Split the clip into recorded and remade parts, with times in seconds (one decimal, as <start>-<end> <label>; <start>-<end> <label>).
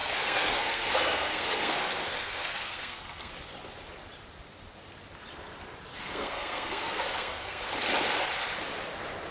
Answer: 0.0-3.3 remade; 3.3-5.9 recorded; 5.9-7.7 remade; 7.7-9.3 recorded